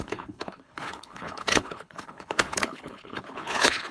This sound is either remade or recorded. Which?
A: remade